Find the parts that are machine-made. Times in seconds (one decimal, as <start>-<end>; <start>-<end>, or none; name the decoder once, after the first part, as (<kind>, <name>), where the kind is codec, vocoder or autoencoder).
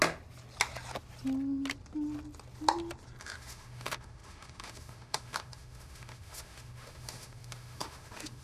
3.2-8.4 (autoencoder, DAC-VAE)